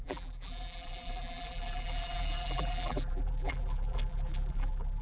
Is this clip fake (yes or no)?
yes